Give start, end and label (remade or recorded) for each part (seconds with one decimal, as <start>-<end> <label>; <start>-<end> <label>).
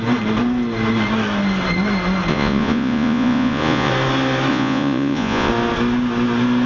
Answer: 0.0-2.3 recorded; 2.3-3.9 remade; 3.9-4.5 recorded; 4.5-5.5 remade; 5.5-6.7 recorded